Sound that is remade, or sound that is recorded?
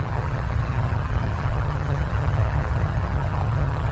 remade